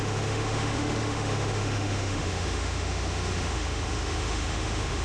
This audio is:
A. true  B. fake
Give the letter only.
B